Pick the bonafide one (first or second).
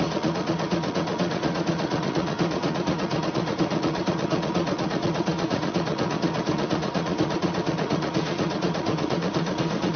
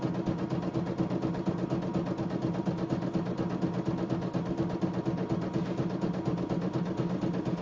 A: second